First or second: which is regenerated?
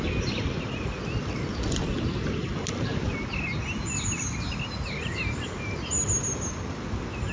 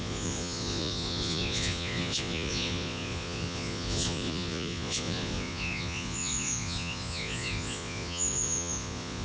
second